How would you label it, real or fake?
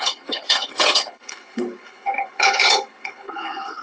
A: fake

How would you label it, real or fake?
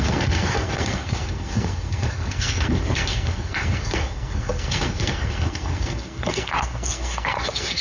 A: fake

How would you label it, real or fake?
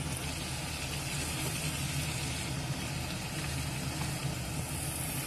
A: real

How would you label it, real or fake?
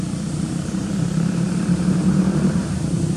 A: fake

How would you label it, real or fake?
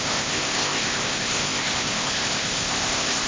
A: fake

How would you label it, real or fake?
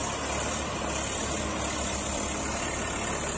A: real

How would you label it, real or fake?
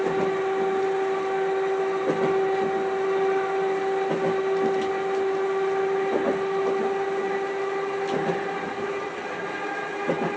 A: real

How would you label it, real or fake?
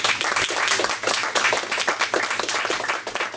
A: real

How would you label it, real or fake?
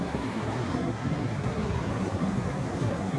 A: fake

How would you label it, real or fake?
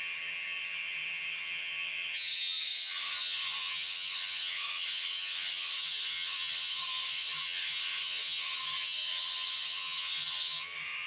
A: fake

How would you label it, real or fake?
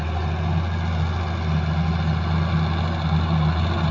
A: real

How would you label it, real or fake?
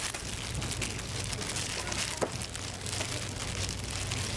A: real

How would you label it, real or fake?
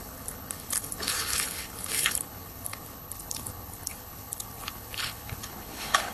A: fake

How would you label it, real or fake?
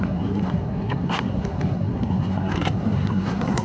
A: fake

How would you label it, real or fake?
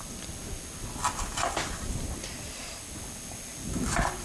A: real